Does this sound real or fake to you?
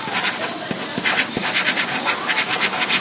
real